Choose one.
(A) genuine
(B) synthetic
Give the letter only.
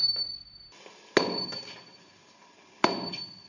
A